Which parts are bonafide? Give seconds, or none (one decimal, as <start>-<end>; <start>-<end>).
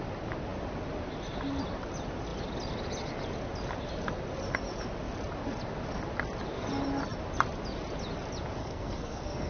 0.0-8.6